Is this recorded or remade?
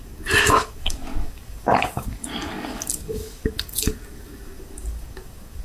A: remade